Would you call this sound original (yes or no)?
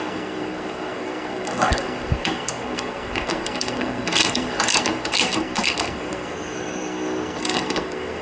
no